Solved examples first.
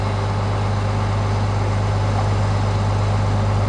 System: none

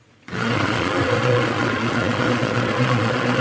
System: vocoder, Vocos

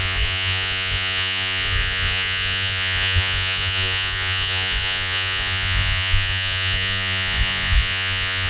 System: vocoder, Vocos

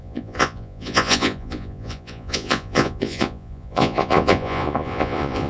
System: vocoder, Vocos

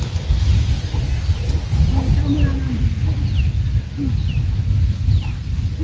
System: none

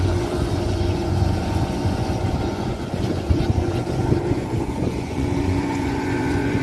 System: vocoder, Vocos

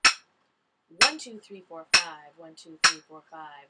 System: none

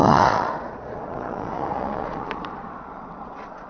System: vocoder, Vocos